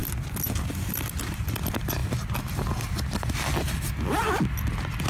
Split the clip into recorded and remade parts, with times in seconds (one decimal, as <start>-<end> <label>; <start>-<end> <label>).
0.0-5.1 recorded